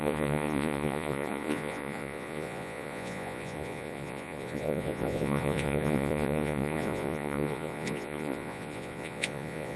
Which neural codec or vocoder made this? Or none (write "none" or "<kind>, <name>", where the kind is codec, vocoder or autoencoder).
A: vocoder, Vocos